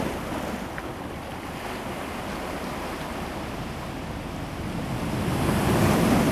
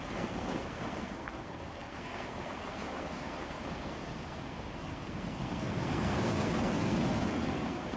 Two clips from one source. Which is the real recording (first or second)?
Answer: first